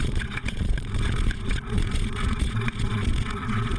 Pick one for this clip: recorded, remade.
remade